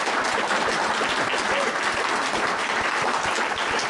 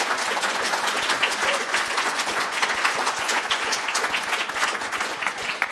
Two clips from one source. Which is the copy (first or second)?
second